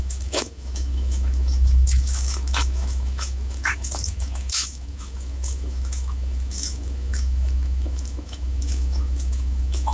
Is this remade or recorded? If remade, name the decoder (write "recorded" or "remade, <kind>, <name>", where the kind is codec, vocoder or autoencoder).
remade, autoencoder, DAC-VAE